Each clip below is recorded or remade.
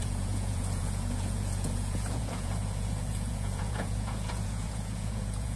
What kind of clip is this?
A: remade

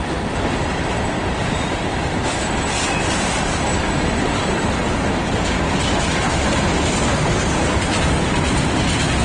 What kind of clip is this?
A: recorded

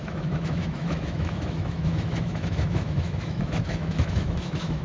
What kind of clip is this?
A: remade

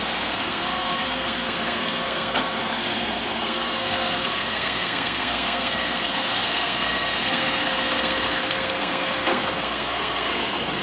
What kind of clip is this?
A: remade